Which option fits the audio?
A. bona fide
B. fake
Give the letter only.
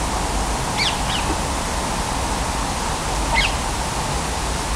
A